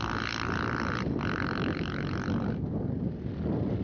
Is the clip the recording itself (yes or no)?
yes